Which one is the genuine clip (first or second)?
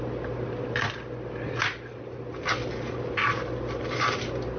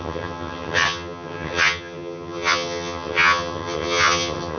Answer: first